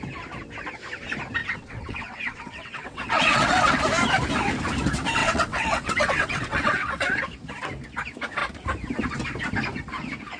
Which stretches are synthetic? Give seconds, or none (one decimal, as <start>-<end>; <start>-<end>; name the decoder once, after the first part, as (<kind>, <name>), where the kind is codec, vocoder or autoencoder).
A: 1.4-3.8 (vocoder, WaveNeXt); 5.2-7.2